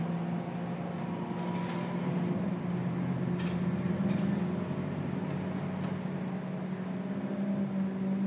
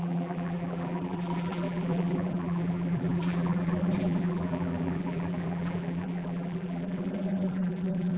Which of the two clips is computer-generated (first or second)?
second